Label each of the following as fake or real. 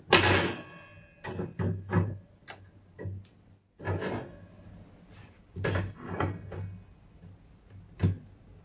real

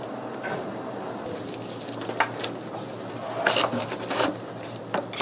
real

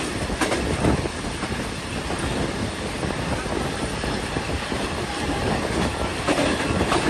real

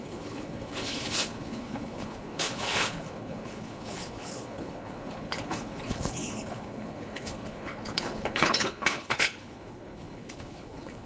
fake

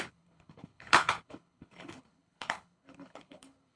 fake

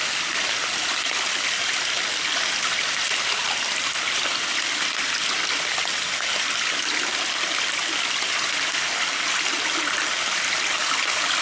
real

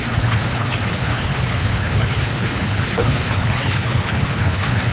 fake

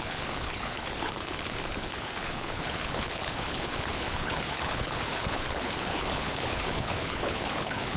fake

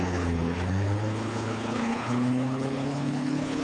fake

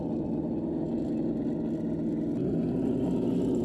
real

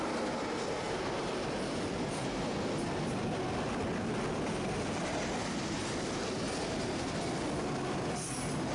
real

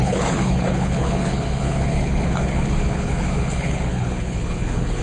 fake